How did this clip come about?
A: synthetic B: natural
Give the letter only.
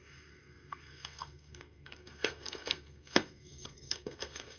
A